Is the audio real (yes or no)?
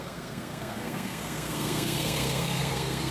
no